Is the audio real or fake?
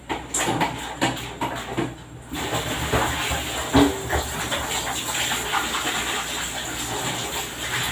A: real